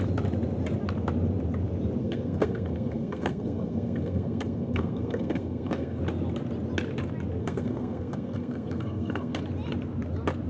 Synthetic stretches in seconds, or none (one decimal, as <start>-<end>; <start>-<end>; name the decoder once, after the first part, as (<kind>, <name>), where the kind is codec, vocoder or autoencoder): 2.0-6.0 (codec, SNAC); 7.4-9.4